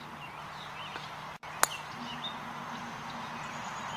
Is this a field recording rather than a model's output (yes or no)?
yes